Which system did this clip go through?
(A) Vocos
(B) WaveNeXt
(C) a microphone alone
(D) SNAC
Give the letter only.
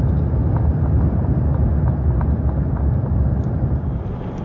C